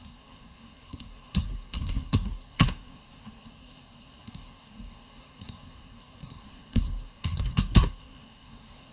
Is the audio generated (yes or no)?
yes